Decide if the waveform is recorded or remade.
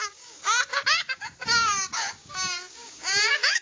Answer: remade